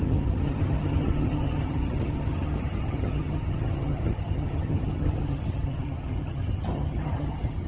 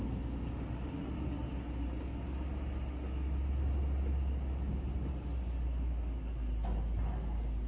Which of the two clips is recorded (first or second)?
second